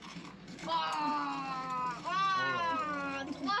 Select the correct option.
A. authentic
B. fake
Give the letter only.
A